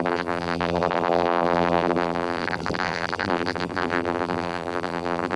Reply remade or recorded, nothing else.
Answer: remade